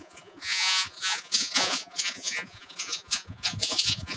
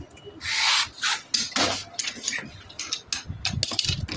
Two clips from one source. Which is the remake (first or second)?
first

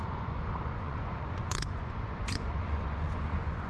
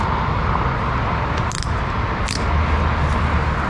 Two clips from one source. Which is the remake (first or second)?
first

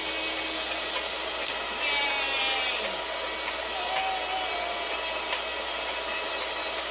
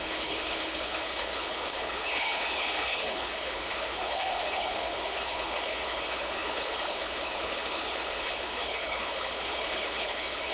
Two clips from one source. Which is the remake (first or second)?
second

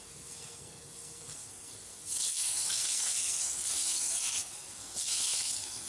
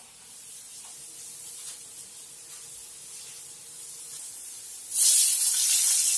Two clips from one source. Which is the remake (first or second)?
first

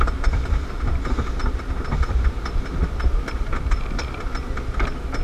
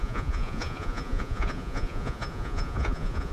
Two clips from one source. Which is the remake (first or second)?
second